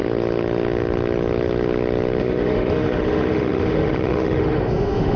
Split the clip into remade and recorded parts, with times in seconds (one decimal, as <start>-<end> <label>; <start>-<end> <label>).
0.0-2.2 recorded; 2.2-5.2 remade

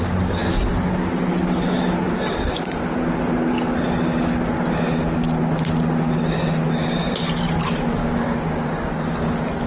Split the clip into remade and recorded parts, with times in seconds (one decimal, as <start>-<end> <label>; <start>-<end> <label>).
0.0-8.0 recorded; 8.0-8.9 remade; 8.9-9.7 recorded

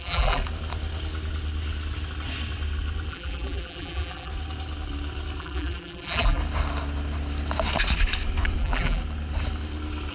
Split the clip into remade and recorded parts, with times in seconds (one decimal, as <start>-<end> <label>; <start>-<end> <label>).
0.0-0.4 remade; 0.4-3.1 recorded; 3.1-4.3 remade; 4.3-5.4 recorded; 5.4-6.4 remade; 6.4-8.6 recorded; 8.6-9.0 remade; 9.0-10.1 recorded

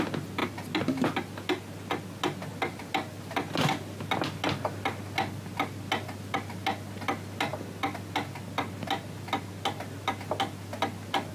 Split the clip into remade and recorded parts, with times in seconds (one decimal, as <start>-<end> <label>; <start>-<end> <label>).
0.0-11.3 recorded

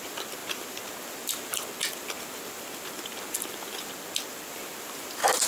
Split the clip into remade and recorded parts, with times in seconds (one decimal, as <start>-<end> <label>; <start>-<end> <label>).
0.0-5.5 recorded

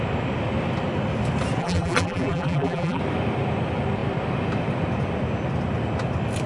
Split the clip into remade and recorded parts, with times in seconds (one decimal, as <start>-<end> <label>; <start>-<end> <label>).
0.0-1.6 recorded; 1.6-3.0 remade; 3.0-6.5 recorded